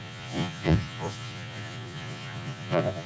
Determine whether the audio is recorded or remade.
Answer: remade